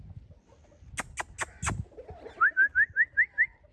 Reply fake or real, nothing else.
real